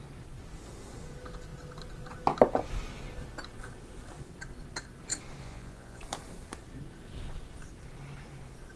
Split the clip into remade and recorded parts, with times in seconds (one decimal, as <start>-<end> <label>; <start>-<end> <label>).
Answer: 0.0-5.4 recorded; 5.4-6.0 remade; 6.0-8.8 recorded